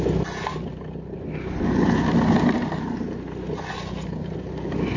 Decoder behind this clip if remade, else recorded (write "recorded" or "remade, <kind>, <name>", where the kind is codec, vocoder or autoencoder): recorded